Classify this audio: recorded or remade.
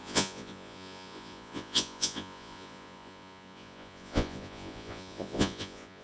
remade